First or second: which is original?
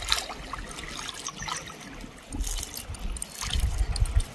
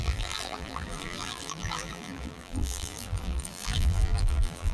first